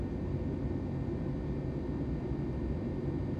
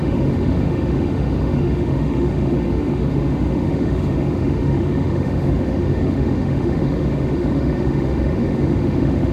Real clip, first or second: first